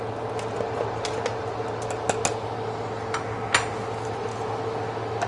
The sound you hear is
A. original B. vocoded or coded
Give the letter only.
A